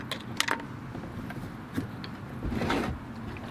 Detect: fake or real real